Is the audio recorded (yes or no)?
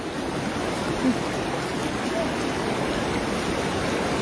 yes